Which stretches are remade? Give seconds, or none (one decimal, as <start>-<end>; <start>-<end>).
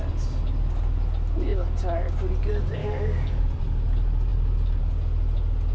2.8-3.4